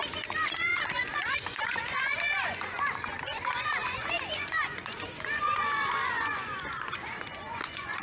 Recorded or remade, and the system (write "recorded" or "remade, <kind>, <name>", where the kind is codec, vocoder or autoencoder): remade, vocoder, Vocos